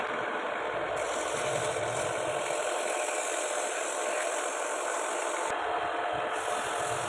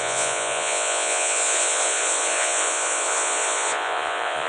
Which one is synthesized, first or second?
second